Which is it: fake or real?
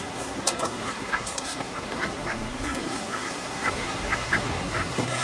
fake